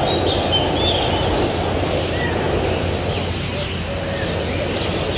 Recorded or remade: recorded